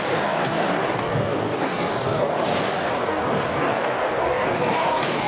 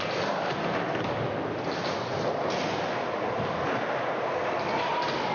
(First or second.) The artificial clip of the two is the first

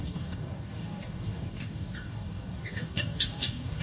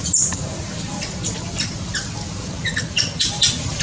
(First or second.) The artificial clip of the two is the first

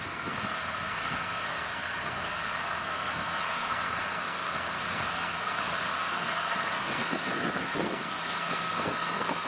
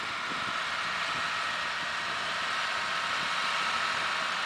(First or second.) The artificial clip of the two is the first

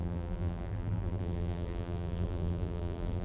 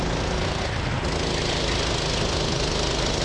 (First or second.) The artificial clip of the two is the first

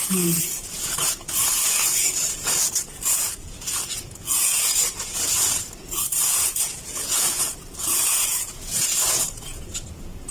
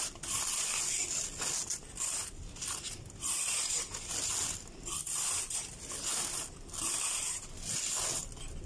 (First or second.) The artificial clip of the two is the first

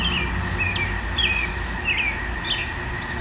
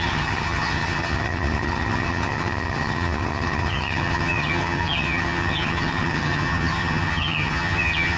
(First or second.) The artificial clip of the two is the second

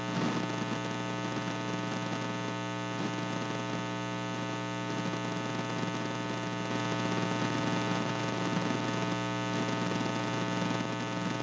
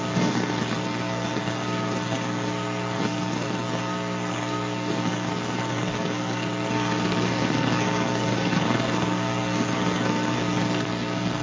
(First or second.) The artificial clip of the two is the second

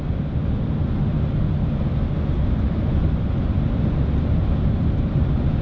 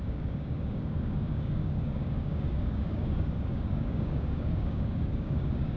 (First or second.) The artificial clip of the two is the second